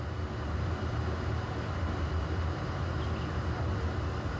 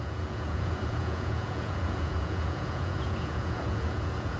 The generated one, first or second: second